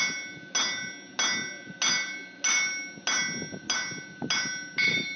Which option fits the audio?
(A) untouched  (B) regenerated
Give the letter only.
A